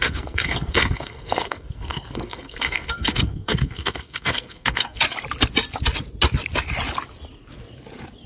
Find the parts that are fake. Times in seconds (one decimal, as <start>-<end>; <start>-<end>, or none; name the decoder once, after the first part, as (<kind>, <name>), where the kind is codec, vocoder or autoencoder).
0.0-5.0 (codec, SNAC)

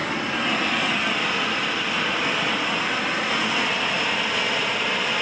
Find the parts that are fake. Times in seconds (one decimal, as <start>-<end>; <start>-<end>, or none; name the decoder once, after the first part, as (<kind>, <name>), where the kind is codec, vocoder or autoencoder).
none